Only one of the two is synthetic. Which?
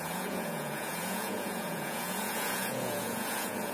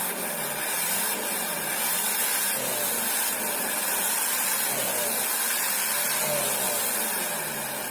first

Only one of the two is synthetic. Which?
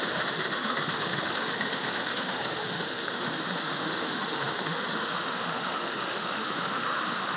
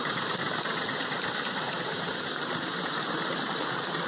first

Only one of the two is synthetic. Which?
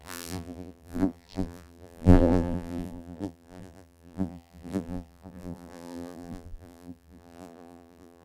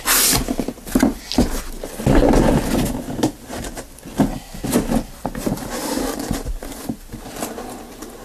first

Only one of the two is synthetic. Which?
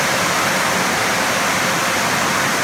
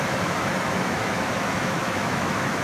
second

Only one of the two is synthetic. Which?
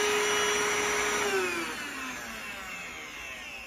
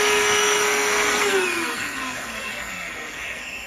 second